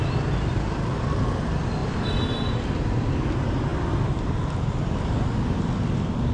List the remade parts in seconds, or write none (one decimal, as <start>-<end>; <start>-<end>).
none

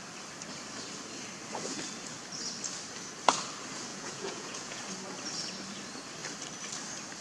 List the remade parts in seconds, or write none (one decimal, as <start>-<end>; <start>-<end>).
3.9-4.8

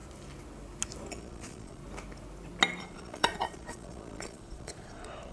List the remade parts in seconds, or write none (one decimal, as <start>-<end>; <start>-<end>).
1.1-1.8; 2.8-5.3

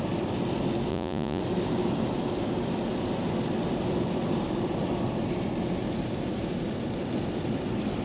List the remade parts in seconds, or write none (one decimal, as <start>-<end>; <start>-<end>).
0.9-1.4